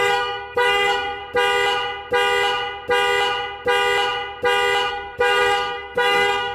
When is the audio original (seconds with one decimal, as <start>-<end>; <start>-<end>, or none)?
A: 1.2-4.9